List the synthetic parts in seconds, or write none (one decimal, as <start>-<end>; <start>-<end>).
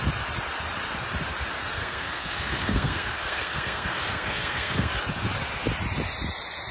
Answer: 1.8-4.9